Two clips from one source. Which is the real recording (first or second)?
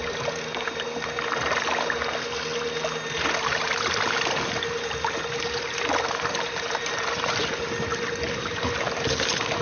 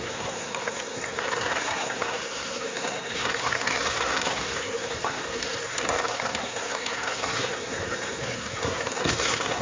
first